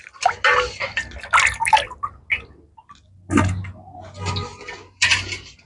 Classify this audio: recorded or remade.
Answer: recorded